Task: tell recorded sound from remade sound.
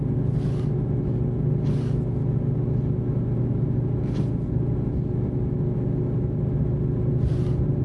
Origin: recorded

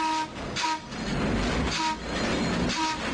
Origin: recorded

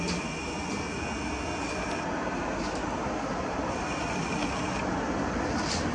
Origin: recorded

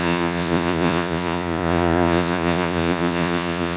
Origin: remade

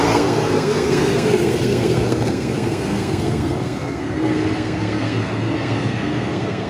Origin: remade